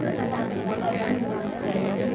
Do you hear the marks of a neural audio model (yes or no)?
yes